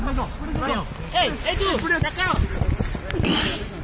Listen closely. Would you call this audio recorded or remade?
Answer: recorded